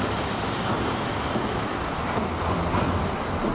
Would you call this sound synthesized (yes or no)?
no